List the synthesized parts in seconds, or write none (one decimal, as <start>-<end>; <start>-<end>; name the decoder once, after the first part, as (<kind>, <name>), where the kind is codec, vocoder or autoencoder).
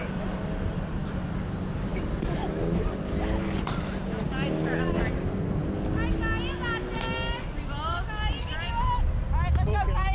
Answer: none